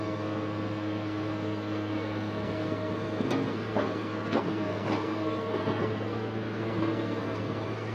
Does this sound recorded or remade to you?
remade